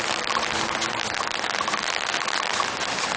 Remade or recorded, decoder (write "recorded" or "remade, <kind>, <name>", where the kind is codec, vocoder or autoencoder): recorded